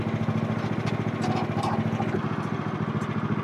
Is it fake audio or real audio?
real